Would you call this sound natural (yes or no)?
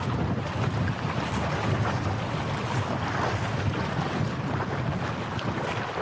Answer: yes